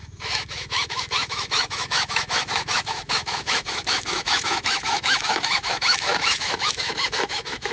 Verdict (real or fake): fake